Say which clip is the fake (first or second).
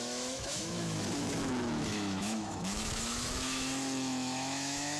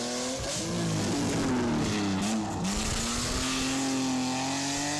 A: first